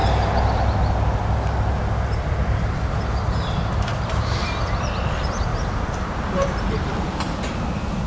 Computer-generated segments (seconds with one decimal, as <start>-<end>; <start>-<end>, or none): 3.9-4.8; 5.5-8.1